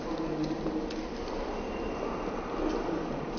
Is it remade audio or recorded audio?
recorded